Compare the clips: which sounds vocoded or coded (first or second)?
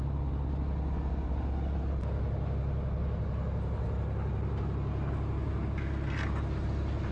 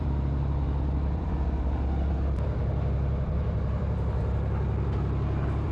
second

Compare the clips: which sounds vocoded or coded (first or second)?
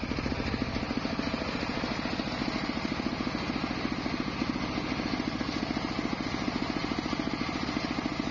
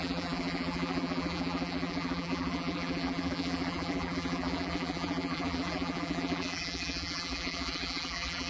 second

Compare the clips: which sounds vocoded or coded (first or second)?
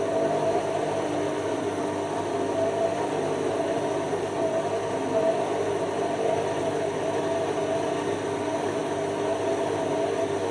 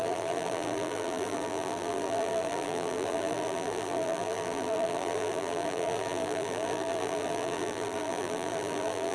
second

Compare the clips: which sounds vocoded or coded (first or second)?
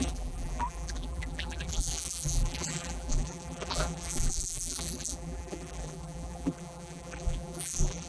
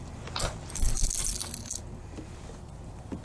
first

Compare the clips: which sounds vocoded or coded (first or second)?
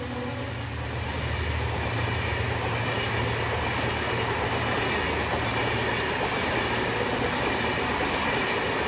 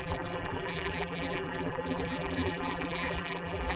second